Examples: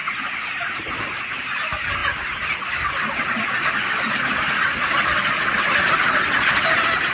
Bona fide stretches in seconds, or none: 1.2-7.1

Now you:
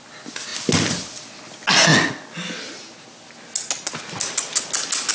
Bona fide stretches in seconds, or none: 0.0-5.1